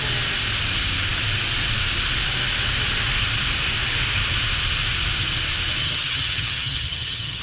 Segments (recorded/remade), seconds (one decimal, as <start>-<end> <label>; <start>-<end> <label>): 0.0-5.8 recorded; 5.8-7.4 remade

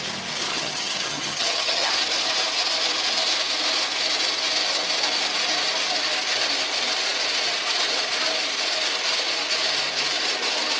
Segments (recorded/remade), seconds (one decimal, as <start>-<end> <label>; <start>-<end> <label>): 0.0-0.5 recorded; 0.5-1.9 remade; 1.9-10.8 recorded

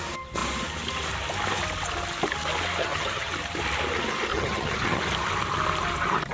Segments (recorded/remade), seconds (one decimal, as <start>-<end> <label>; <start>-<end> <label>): 0.0-2.8 recorded; 2.8-3.3 remade; 3.3-4.3 recorded; 4.3-5.0 remade; 5.0-6.3 recorded

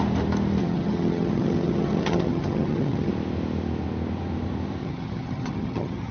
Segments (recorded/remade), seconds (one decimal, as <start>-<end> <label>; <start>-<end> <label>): 0.0-0.6 recorded; 0.6-3.1 remade; 3.1-4.8 recorded; 4.8-6.1 remade